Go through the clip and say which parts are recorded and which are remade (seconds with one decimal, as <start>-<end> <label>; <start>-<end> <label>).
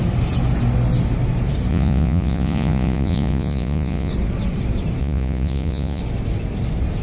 0.0-1.7 recorded; 1.7-4.1 remade; 4.1-5.0 recorded; 5.0-6.0 remade; 6.0-7.0 recorded